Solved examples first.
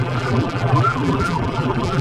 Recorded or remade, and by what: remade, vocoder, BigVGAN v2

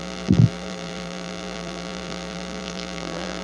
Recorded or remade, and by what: remade, vocoder, BigVGAN v2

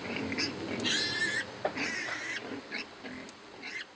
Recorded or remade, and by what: recorded